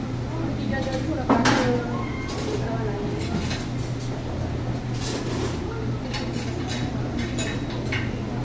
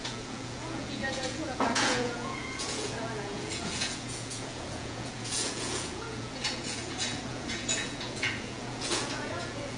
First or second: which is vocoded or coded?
second